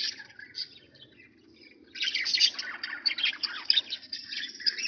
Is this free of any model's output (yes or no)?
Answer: yes